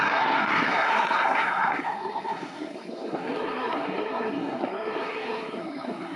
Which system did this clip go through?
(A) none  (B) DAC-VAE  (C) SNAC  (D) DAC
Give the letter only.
C